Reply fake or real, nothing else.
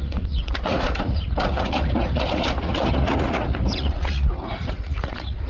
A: fake